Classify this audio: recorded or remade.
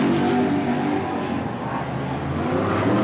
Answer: recorded